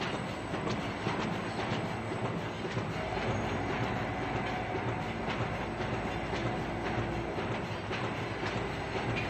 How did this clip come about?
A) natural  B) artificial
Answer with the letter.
A